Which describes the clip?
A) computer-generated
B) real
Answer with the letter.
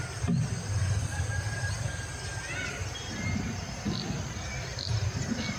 B